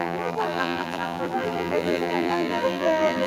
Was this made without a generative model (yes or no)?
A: no